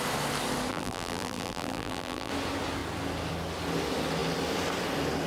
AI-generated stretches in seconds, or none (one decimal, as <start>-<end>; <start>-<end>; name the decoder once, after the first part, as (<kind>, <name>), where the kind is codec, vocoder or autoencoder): 0.7-2.3 (vocoder, BigVGAN v2)